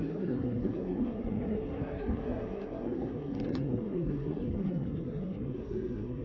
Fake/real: fake